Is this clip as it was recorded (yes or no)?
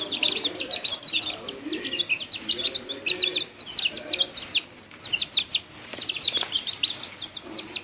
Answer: yes